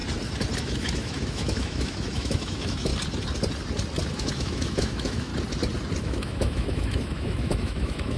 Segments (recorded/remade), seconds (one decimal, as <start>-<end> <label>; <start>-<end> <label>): 0.0-0.6 recorded; 0.6-2.9 remade; 2.9-4.1 recorded; 4.1-5.3 remade; 5.3-6.0 recorded; 6.0-8.2 remade